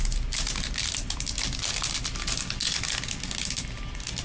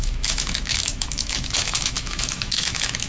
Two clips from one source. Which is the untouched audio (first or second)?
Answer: first